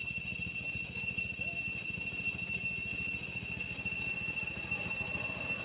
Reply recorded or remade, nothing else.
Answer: recorded